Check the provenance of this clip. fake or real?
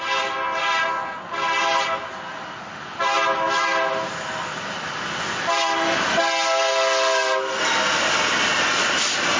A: real